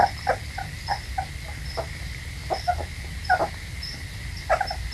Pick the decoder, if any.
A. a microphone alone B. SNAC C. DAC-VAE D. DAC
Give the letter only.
A